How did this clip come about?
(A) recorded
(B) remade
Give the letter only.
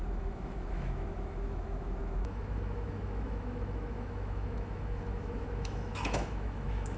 B